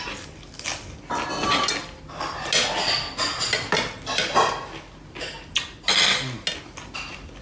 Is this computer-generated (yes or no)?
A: no